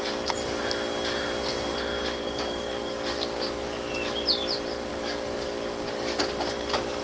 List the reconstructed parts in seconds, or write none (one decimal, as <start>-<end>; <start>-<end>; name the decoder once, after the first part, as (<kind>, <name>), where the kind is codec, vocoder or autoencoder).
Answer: 2.2-3.9 (codec, DAC); 4.9-6.2